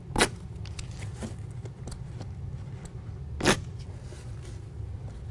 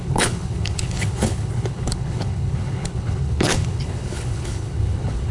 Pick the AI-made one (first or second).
second